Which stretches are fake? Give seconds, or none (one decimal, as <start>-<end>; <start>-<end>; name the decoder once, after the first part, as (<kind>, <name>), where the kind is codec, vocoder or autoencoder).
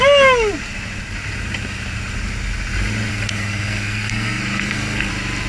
3.1-5.1 (codec, SNAC)